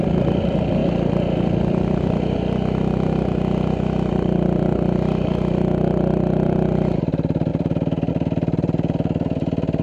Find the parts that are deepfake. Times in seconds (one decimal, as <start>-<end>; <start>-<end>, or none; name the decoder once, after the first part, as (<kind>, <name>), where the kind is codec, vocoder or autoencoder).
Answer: 0.0-0.8 (vocoder, BigVGAN v2); 4.1-9.8